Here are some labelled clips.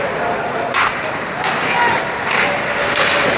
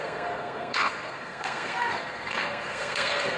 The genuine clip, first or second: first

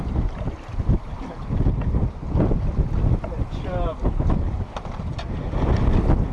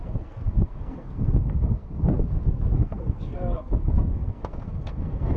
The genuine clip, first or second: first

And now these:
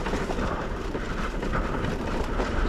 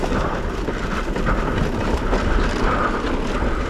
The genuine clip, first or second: second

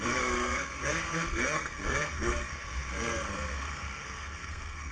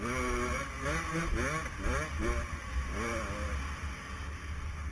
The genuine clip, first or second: second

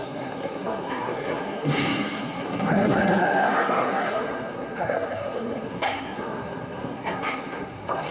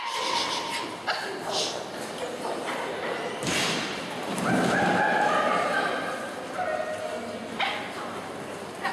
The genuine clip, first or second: second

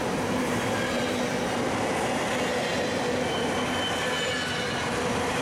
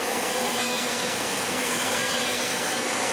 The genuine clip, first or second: first